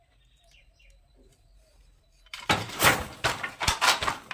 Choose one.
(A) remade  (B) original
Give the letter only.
A